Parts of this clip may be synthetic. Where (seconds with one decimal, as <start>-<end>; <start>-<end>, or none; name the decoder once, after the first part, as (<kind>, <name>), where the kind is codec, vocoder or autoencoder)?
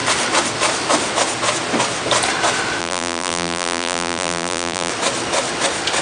2.8-4.9 (vocoder, BigVGAN v2)